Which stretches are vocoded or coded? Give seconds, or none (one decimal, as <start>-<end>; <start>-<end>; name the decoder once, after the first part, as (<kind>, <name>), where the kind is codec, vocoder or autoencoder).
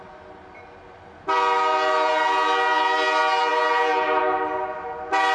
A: none